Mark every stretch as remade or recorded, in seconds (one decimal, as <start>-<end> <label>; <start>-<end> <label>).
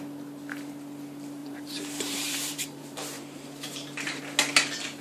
0.0-1.4 recorded; 1.4-4.2 remade; 4.2-5.0 recorded